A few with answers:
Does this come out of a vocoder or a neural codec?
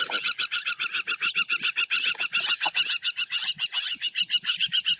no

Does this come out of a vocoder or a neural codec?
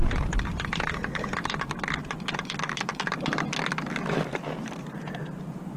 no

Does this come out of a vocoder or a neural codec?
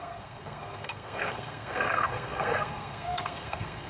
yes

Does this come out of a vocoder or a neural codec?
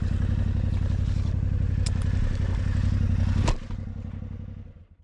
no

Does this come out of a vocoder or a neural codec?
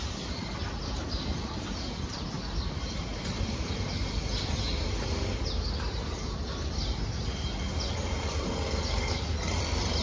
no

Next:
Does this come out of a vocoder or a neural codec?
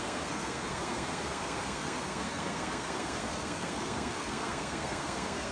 yes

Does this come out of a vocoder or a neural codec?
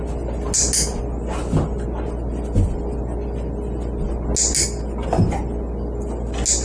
no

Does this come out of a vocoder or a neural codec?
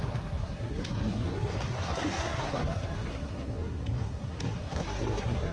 yes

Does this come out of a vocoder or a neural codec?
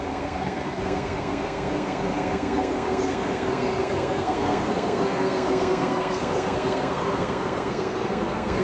yes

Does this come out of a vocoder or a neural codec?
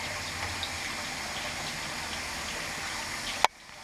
no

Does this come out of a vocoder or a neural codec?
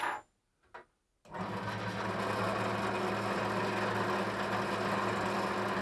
no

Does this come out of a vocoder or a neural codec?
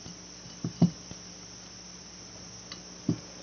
no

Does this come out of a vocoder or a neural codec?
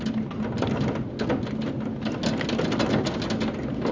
no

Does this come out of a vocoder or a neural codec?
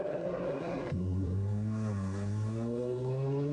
yes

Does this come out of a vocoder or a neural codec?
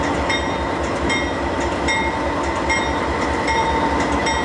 no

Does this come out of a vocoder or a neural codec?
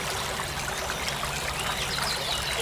no